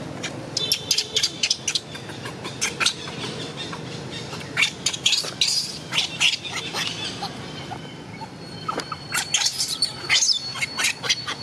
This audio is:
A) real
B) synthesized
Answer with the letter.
A